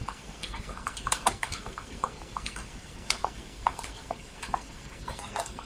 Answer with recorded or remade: remade